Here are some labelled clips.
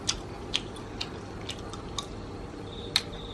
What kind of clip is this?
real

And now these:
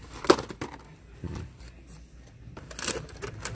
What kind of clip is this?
real